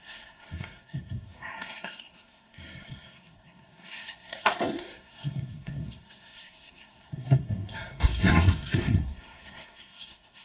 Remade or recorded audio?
remade